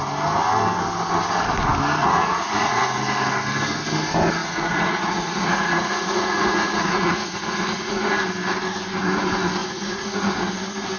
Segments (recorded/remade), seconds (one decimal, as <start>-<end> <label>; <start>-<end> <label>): 0.0-2.0 recorded; 2.0-2.8 remade; 2.8-4.4 recorded; 4.4-8.1 remade; 8.1-9.6 recorded; 9.6-10.5 remade; 10.5-11.0 recorded